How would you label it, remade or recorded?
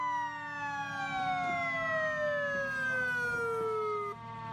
recorded